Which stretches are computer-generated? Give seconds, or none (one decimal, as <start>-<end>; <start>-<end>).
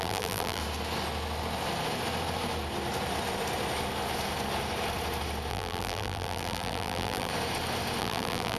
0.0-0.6; 5.5-7.3; 8.0-8.6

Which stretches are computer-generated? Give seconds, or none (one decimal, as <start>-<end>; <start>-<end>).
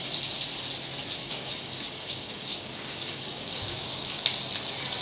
1.2-4.2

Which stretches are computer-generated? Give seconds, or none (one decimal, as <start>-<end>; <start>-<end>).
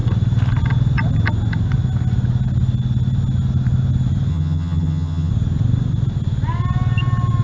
4.3-5.3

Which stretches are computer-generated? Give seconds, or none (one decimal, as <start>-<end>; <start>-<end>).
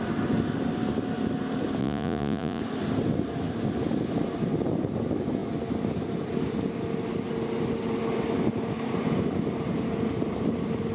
1.8-2.6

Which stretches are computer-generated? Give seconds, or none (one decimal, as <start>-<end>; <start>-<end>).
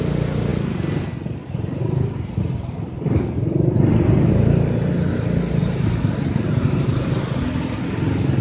5.6-7.2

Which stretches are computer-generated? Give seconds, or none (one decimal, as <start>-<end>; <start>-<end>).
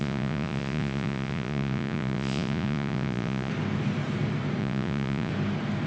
0.0-3.5; 4.6-5.3